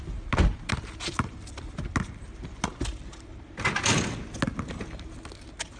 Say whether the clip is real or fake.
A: real